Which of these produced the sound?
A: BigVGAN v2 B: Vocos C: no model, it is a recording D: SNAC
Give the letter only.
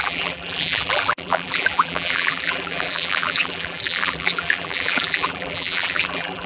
A